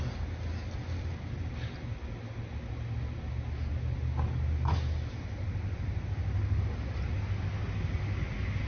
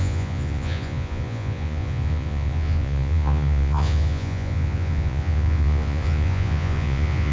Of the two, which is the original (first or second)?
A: first